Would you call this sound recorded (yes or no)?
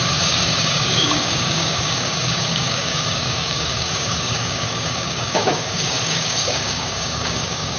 no